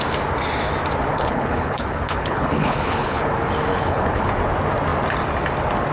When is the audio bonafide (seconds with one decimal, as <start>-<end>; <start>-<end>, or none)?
0.0-1.1; 3.3-3.7; 4.2-5.9